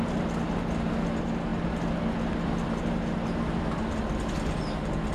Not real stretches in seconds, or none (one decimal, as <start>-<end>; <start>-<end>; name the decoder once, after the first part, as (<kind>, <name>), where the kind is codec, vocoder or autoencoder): none

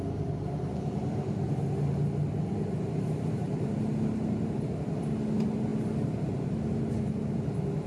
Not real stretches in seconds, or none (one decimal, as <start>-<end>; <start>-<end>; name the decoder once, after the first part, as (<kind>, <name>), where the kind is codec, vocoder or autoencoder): none

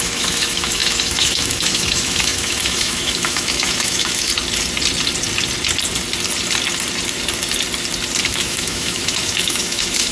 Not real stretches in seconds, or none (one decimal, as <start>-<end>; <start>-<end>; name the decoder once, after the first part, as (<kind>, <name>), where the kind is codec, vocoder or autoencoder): 0.0-4.3 (autoencoder, DAC-VAE); 8.2-10.1